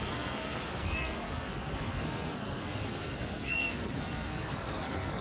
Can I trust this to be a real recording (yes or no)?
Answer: no